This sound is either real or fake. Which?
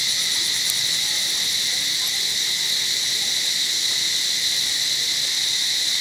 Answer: real